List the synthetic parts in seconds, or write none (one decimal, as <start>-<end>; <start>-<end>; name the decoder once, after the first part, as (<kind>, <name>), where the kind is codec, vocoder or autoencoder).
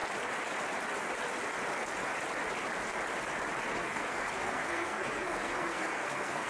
3.8-6.5 (codec, SNAC)